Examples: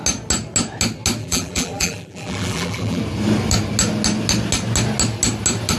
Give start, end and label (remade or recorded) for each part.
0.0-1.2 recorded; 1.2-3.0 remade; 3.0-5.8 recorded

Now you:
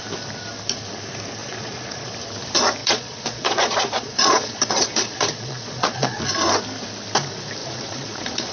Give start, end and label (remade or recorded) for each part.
0.0-1.4 recorded; 1.4-2.1 remade; 2.1-2.8 recorded; 2.8-6.2 remade; 6.2-7.6 recorded; 7.6-8.5 remade

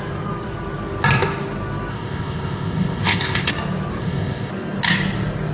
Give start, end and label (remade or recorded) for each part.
0.0-1.9 recorded; 1.9-3.5 remade; 3.5-4.0 recorded; 4.0-4.5 remade; 4.5-5.5 recorded

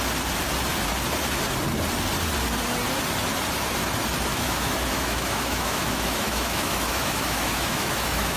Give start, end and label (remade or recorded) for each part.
0.0-4.3 recorded; 4.3-8.4 remade